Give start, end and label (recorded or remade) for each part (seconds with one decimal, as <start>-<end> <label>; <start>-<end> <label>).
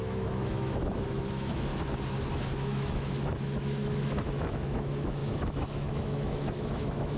0.0-1.7 remade; 1.7-2.5 recorded; 2.5-7.2 remade